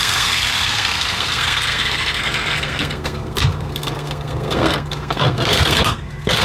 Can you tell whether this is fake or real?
fake